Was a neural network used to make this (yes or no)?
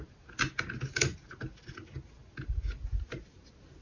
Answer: no